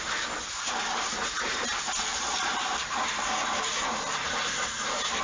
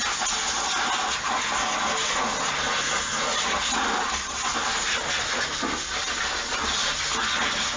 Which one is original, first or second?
second